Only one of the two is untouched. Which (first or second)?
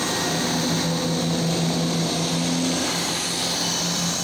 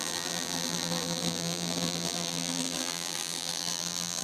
first